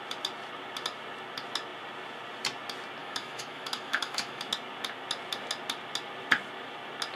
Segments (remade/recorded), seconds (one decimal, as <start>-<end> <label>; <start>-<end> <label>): 0.0-3.0 recorded; 3.0-4.4 remade; 4.4-7.2 recorded